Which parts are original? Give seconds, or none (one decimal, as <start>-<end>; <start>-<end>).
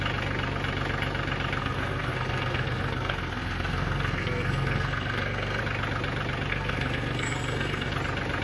0.0-1.6; 5.6-6.5; 7.9-8.4